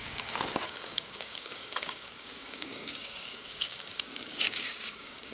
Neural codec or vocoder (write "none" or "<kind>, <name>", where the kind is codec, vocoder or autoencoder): codec, DAC